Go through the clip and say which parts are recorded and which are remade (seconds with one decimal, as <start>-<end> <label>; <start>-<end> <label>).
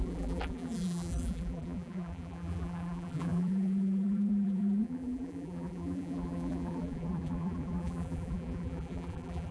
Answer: 0.0-9.5 remade